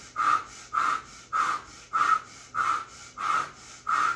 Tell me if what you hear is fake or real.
real